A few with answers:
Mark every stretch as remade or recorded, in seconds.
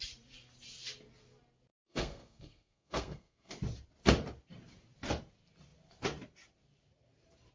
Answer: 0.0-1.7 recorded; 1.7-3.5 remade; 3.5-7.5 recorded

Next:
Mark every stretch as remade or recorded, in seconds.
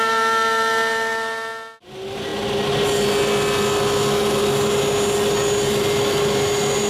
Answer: 0.0-6.9 recorded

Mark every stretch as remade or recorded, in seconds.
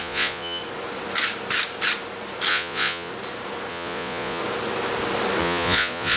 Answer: 0.0-0.6 remade; 0.6-2.5 recorded; 2.5-3.1 remade; 3.1-3.7 recorded; 3.7-4.4 remade; 4.4-5.4 recorded; 5.4-6.2 remade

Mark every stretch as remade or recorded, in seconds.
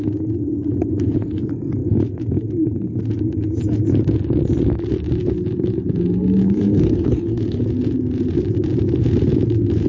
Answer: 0.0-6.4 recorded; 6.4-7.6 remade; 7.6-9.9 recorded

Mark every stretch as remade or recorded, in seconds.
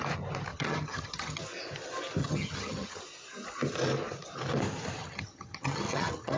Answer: 0.0-0.5 recorded; 0.5-1.4 remade; 1.4-2.2 recorded; 2.2-3.0 remade; 3.0-5.0 recorded; 5.0-6.4 remade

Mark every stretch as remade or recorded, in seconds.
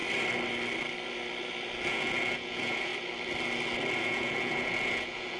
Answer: 0.0-1.9 recorded; 1.9-2.9 remade; 2.9-4.0 recorded; 4.0-5.4 remade